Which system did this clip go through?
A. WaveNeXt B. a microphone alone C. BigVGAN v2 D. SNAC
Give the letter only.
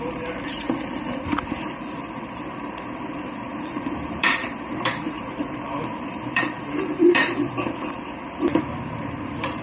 C